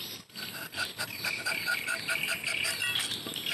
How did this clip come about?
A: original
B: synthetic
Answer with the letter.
A